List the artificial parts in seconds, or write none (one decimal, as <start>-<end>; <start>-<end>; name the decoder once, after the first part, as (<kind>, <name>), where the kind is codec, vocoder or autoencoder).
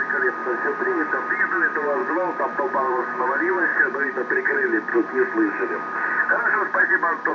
2.0-2.6 (autoencoder, DAC-VAE)